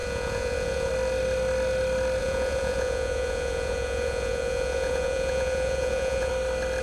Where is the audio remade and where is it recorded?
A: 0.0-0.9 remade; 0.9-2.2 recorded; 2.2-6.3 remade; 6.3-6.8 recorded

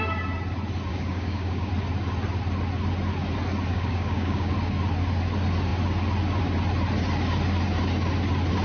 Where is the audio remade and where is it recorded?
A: 0.0-0.9 recorded; 0.9-1.7 remade; 1.7-3.7 recorded; 3.7-4.5 remade; 4.5-8.6 recorded

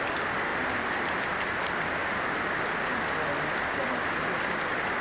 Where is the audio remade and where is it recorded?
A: 0.0-5.0 recorded

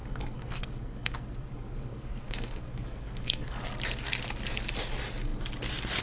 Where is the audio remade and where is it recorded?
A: 0.0-3.6 remade; 3.6-6.0 recorded